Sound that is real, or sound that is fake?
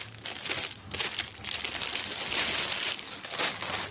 real